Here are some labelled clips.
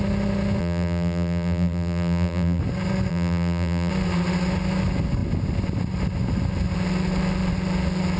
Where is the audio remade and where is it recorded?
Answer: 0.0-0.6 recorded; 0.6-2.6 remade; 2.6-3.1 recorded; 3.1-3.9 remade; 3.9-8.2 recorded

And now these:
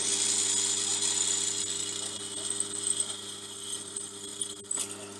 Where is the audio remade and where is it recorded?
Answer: 0.0-5.2 recorded

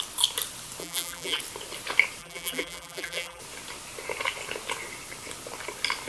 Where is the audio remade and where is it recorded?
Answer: 0.0-0.8 recorded; 0.8-1.4 remade; 1.4-2.2 recorded; 2.2-3.4 remade; 3.4-6.1 recorded

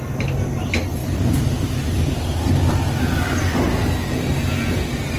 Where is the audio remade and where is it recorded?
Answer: 0.0-1.0 recorded; 1.0-3.0 remade; 3.0-5.2 recorded

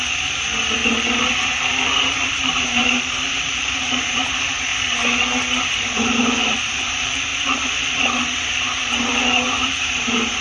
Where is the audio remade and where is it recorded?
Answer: 0.0-0.8 remade; 0.8-2.3 recorded; 2.3-4.7 remade; 4.7-5.7 recorded; 5.7-7.3 remade; 7.3-8.5 recorded; 8.5-10.4 remade

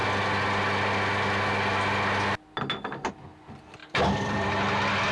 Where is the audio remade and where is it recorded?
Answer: 0.0-3.8 recorded; 3.8-4.5 remade; 4.5-5.1 recorded

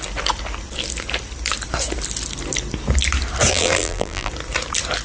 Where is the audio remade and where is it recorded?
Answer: 0.0-3.5 recorded; 3.5-4.3 remade; 4.3-5.0 recorded

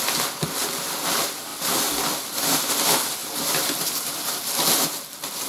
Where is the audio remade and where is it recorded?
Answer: 0.0-1.5 recorded; 1.5-2.7 remade; 2.7-3.2 recorded; 3.2-4.1 remade; 4.1-5.5 recorded